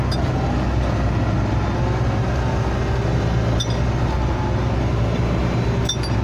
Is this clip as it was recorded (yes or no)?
yes